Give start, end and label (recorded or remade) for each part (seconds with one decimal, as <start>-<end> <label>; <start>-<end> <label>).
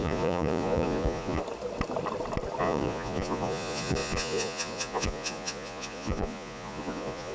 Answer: 0.0-1.4 remade; 1.4-2.6 recorded; 2.6-7.3 remade